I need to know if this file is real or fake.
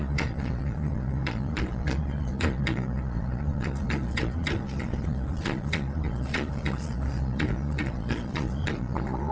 fake